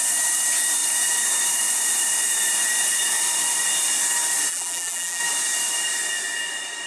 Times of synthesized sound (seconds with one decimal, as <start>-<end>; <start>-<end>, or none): 4.5-5.2